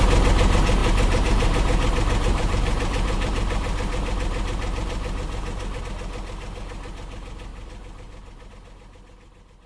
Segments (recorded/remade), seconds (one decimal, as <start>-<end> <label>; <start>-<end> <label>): 0.0-0.8 recorded; 0.8-5.8 remade; 5.8-7.5 recorded; 7.5-8.5 remade; 8.5-9.7 recorded